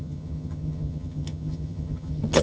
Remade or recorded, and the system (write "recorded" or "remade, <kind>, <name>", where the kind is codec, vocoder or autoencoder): remade, vocoder, HiFi-GAN